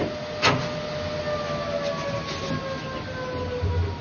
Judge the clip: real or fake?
real